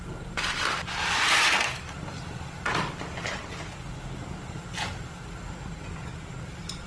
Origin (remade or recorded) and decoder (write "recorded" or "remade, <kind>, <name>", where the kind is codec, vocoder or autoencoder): recorded